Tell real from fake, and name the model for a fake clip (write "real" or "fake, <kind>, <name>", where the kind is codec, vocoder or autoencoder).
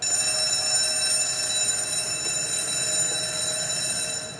real